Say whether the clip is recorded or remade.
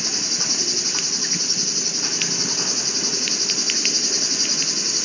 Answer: recorded